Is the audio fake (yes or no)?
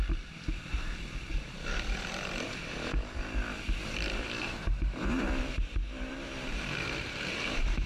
yes